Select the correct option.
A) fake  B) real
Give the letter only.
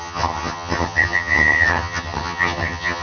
A